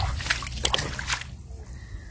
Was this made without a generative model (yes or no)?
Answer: yes